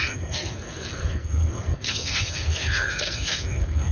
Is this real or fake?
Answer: fake